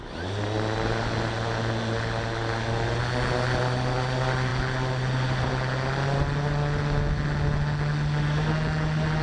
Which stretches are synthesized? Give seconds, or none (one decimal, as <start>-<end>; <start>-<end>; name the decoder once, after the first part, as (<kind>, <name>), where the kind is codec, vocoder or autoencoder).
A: none